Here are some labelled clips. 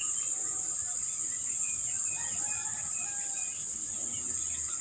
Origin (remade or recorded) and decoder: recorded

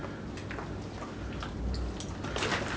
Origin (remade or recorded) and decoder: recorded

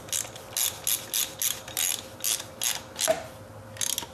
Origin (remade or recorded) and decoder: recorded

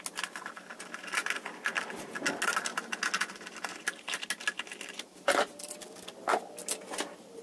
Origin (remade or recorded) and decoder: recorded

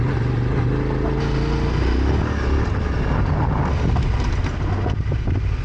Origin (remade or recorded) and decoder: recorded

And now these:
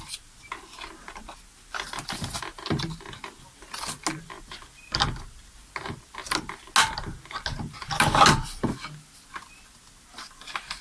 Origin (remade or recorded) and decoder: recorded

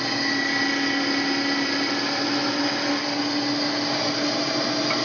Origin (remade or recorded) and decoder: recorded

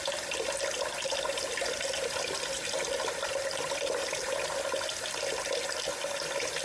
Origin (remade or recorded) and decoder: recorded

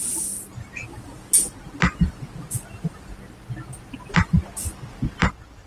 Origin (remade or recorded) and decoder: recorded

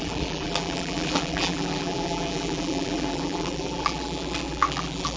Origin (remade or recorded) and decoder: remade, vocoder, BigVGAN v2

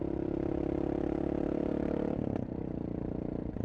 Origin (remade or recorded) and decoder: remade, vocoder, BigVGAN v2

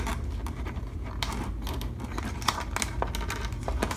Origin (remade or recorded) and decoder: recorded